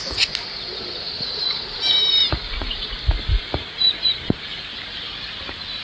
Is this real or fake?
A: real